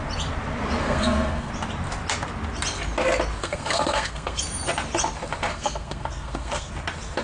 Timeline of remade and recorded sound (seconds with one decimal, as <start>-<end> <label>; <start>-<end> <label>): 0.0-0.8 recorded; 0.8-1.5 remade; 1.5-3.4 recorded; 3.4-4.4 remade; 4.4-5.5 recorded; 5.5-6.7 remade; 6.7-7.2 recorded